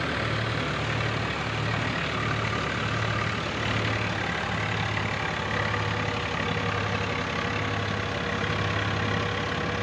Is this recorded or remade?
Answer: recorded